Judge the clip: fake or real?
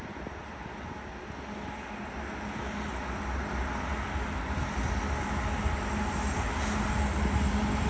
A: real